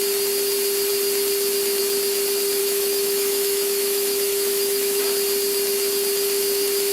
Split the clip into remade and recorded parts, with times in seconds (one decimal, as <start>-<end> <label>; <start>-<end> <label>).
0.0-2.6 recorded; 2.6-5.0 remade; 5.0-6.9 recorded